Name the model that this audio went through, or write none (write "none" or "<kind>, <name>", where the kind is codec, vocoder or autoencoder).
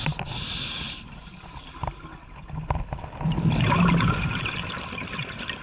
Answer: none